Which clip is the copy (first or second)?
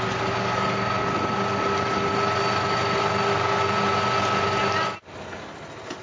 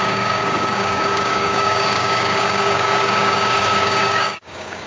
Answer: second